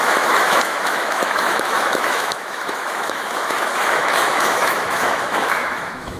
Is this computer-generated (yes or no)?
yes